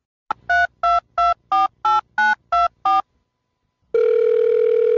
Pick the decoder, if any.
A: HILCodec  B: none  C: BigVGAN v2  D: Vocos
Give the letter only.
B